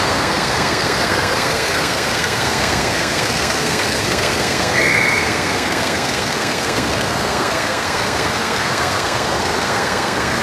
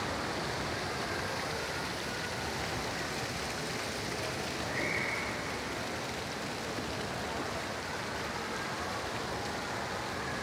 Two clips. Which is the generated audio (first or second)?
first